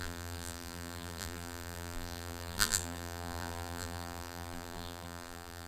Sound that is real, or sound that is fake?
fake